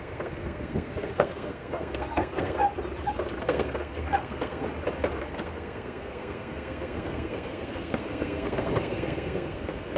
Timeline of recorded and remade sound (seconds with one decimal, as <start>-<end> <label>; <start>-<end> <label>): 0.0-2.6 remade; 2.6-3.4 recorded; 3.4-4.6 remade; 4.6-5.2 recorded; 5.2-10.0 remade